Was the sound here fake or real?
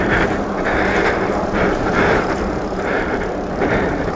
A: fake